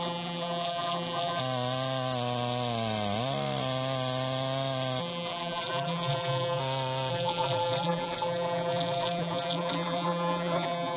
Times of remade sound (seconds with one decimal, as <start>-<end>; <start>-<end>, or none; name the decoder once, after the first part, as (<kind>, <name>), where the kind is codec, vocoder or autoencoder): 0.0-1.4 (vocoder, BigVGAN v2); 5.0-6.6; 7.1-11.0